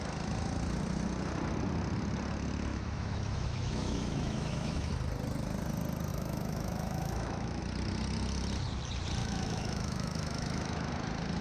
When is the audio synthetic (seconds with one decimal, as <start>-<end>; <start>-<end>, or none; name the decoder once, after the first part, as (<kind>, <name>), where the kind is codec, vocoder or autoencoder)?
2.7-4.9 (autoencoder, DAC-VAE); 6.1-7.6; 9.2-10.9

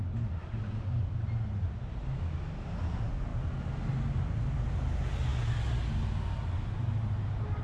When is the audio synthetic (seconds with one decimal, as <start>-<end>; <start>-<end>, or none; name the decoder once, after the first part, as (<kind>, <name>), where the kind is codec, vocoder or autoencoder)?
none

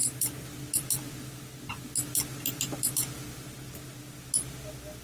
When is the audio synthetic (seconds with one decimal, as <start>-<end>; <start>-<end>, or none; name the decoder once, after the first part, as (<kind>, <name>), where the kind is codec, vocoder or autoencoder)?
none

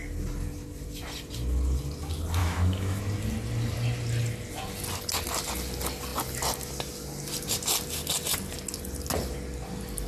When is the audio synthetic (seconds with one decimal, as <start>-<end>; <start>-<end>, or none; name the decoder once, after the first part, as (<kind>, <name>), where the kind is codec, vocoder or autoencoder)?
2.4-3.0 (autoencoder, DAC-VAE)

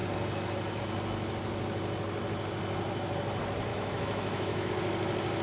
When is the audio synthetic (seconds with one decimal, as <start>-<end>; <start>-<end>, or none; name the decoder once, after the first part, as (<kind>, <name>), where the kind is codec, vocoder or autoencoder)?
3.7-4.7 (autoencoder, DAC-VAE)

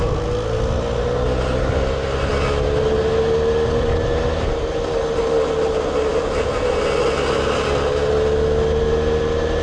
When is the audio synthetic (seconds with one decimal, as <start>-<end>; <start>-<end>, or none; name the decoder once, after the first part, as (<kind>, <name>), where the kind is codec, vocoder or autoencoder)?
none

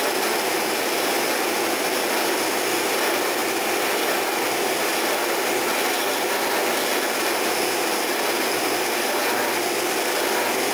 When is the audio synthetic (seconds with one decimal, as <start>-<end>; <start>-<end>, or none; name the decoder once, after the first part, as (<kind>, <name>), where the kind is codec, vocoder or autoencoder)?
none